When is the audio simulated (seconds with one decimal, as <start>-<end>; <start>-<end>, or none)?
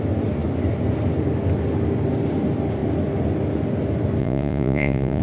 4.2-5.2